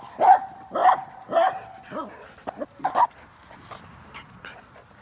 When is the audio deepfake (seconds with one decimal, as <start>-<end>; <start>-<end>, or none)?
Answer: none